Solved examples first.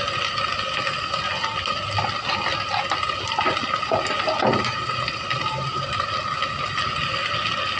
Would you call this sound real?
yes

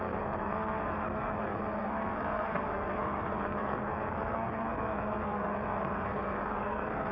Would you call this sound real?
no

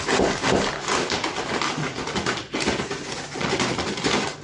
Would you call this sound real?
yes